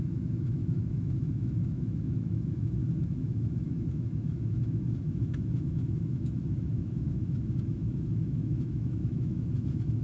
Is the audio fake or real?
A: fake